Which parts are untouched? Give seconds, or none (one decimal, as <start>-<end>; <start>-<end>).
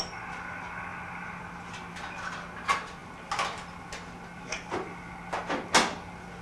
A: 0.0-6.4